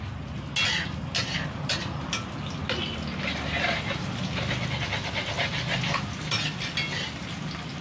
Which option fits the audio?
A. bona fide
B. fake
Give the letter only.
A